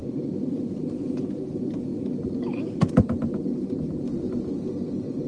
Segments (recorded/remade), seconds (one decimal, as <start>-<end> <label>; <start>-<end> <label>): 0.0-0.7 remade; 0.7-5.3 recorded

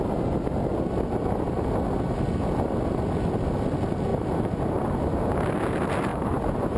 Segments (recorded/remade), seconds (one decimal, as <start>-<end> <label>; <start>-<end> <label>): 0.0-4.1 recorded; 4.1-4.8 remade; 4.8-6.1 recorded; 6.1-6.8 remade

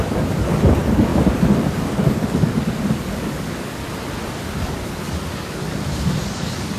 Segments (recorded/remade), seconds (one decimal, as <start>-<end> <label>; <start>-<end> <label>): 0.0-3.8 remade; 3.8-4.4 recorded; 4.4-6.8 remade

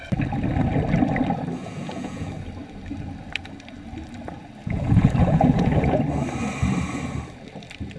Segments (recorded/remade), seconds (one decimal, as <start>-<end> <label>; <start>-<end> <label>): 0.0-1.6 recorded; 1.6-2.3 remade; 2.3-4.6 recorded; 4.6-6.0 remade; 6.0-8.0 recorded

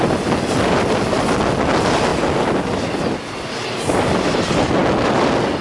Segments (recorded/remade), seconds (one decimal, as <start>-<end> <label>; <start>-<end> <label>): 0.0-5.6 recorded

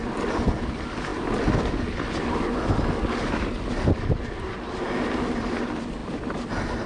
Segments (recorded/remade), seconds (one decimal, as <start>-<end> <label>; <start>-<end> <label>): 0.0-6.9 recorded

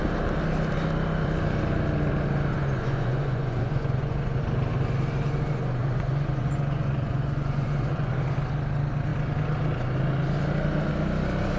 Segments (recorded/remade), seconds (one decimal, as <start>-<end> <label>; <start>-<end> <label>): 0.0-2.5 recorded; 2.5-4.4 remade; 4.4-5.8 recorded; 5.8-8.1 remade; 8.1-11.6 recorded